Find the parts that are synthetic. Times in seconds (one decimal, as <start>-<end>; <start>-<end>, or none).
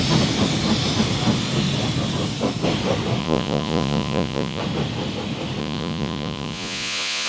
3.2-4.6; 5.6-7.3